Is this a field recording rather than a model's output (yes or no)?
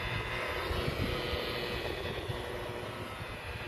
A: yes